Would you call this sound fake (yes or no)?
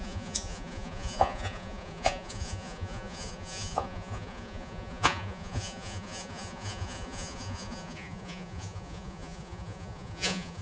yes